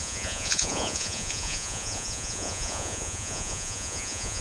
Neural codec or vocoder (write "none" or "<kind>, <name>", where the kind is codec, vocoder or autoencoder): vocoder, Vocos